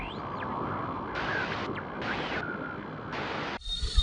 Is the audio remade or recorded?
recorded